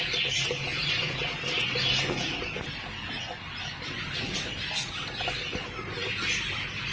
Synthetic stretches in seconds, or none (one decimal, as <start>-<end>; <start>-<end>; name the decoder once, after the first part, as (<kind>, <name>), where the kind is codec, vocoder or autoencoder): none